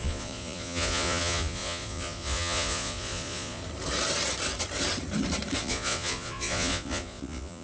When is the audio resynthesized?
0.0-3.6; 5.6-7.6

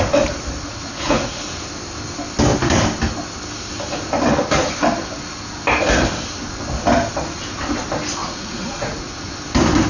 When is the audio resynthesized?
0.7-1.4; 8.2-9.3